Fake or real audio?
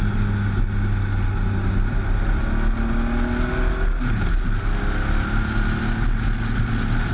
real